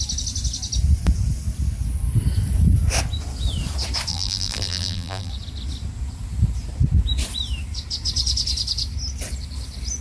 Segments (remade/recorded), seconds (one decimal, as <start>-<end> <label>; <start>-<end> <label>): 0.0-4.1 recorded; 4.1-5.3 remade; 5.3-10.0 recorded